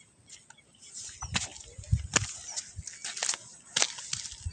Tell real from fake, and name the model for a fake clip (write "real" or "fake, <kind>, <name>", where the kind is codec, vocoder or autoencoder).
real